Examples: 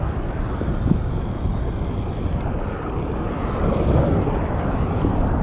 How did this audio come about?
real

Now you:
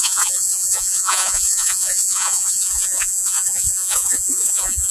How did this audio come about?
fake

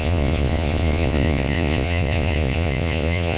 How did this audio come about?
fake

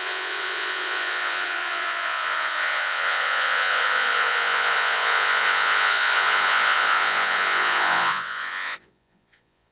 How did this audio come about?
fake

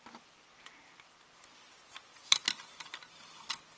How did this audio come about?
real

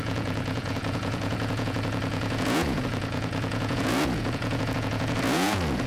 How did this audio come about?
fake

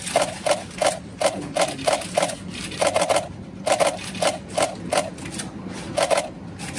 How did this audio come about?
real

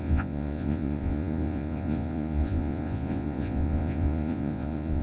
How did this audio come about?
fake